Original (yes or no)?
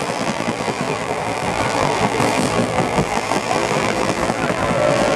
no